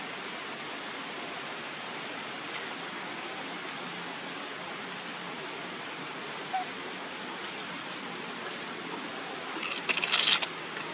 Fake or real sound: real